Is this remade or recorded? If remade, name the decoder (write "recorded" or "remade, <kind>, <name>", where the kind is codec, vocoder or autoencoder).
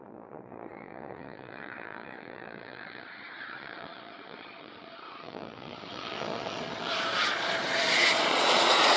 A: remade, vocoder, Vocos